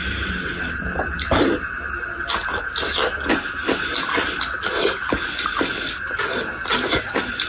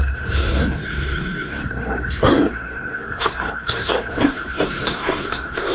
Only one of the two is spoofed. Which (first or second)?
second